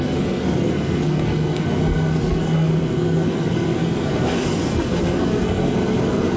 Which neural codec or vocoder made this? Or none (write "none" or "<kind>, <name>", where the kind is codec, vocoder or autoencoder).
codec, SNAC